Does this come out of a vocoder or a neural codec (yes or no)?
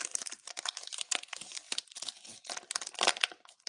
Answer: no